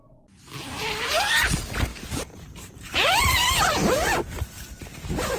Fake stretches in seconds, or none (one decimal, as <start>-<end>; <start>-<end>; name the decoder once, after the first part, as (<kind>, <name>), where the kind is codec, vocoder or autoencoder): 1.9-3.2 (vocoder, BigVGAN v2); 3.8-5.4